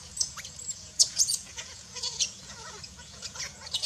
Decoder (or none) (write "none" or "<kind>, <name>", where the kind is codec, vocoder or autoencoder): vocoder, Vocos